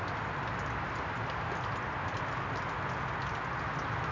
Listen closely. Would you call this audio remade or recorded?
recorded